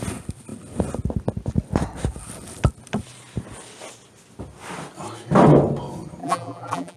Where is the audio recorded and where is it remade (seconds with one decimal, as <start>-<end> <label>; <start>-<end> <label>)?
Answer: 0.0-6.2 recorded; 6.2-7.0 remade